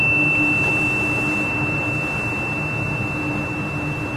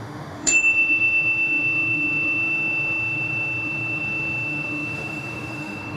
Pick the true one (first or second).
first